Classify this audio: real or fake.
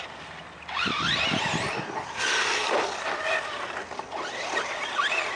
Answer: real